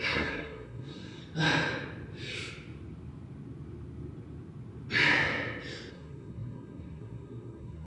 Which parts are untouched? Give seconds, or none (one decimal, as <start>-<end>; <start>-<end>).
1.2-5.9